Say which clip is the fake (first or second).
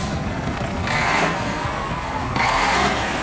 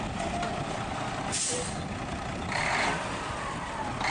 first